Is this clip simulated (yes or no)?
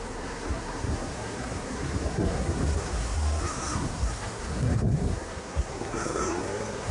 yes